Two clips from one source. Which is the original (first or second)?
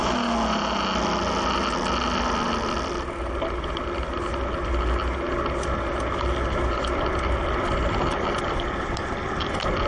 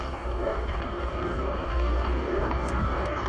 first